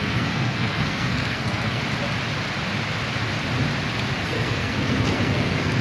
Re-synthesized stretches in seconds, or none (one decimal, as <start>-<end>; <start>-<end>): 0.0-1.8; 4.2-5.8